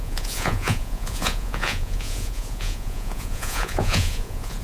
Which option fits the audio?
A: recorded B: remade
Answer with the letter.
B